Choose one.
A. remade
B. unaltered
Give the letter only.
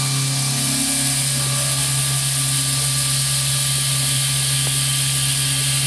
B